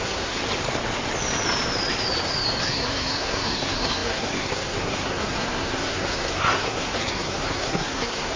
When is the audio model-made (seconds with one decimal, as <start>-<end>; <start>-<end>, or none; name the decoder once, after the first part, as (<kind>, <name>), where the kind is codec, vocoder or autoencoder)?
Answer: 0.0-0.4 (codec, SNAC); 2.6-8.4